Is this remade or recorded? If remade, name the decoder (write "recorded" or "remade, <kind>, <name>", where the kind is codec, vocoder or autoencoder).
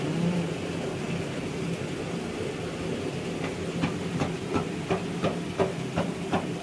recorded